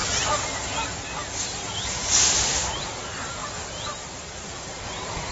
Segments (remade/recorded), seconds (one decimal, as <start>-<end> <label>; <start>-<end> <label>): 0.0-3.4 recorded; 3.4-4.8 remade; 4.8-5.3 recorded